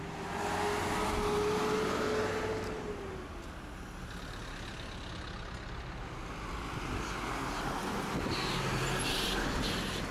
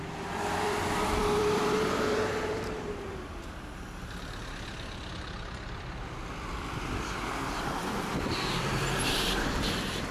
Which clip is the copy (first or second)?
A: second